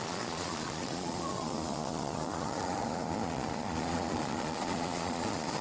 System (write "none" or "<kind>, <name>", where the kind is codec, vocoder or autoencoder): vocoder, Vocos